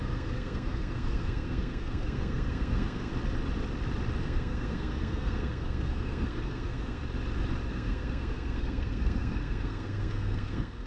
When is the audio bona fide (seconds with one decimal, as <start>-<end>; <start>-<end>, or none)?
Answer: 3.1-4.2; 7.0-7.7